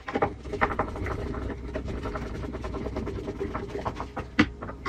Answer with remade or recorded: recorded